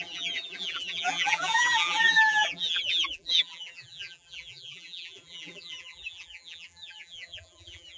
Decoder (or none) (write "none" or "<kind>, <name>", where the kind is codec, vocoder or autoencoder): vocoder, BigVGAN v2